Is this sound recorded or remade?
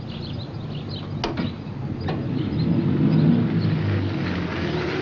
recorded